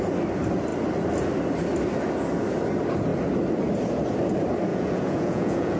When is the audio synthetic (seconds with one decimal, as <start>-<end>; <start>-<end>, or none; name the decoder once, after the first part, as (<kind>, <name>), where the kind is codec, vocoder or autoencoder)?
4.7-5.8 (vocoder, Vocos)